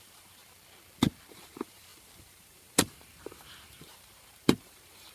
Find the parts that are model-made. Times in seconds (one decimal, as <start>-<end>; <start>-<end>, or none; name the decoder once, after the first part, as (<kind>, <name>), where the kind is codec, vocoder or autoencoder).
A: 0.0-0.4 (vocoder, BigVGAN v2); 1.3-5.1